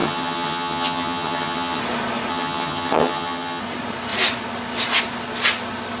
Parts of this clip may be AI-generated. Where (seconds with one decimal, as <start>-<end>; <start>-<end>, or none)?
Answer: 0.0-1.8; 2.3-3.6